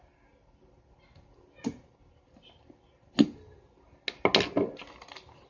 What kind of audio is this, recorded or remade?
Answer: recorded